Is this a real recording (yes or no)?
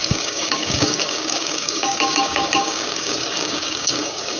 no